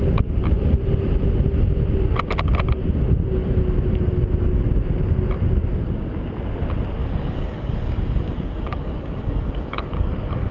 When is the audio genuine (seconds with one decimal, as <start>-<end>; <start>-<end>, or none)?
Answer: 0.0-7.0